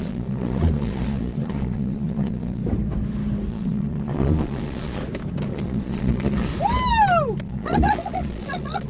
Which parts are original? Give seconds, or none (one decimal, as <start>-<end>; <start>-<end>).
2.6-3.5; 5.0-5.5; 6.5-7.4